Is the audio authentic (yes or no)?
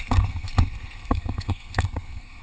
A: no